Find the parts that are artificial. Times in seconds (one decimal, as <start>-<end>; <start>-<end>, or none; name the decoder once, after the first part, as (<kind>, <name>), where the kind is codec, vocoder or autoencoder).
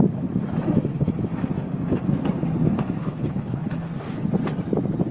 3.0-3.6 (codec, HILCodec)